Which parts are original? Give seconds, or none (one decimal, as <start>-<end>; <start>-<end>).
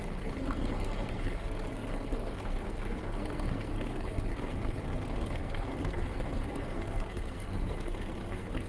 none